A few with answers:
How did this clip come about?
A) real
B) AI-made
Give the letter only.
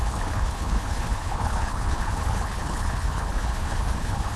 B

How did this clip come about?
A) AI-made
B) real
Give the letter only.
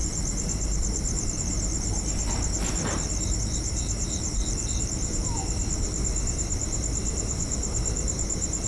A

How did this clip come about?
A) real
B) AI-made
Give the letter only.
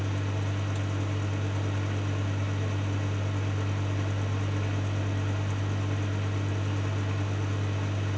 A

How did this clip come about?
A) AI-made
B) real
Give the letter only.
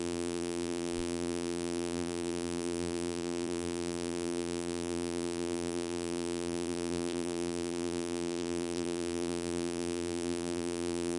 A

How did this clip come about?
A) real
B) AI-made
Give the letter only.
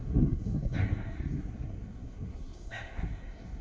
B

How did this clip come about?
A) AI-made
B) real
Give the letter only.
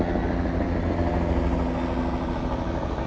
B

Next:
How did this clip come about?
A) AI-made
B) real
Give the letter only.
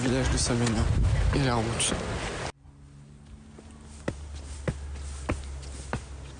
B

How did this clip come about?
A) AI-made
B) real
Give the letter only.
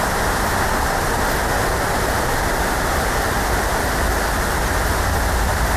B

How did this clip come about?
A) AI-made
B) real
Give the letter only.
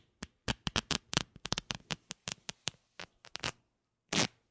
B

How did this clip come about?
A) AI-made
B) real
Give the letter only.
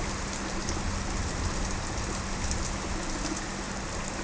B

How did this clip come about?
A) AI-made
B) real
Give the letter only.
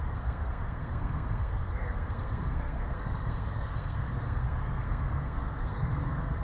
A